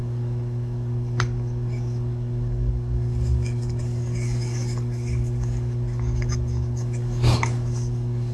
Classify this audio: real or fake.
fake